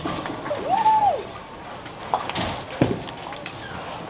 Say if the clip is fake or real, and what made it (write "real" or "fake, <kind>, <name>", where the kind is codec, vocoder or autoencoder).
real